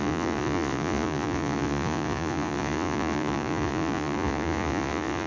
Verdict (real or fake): fake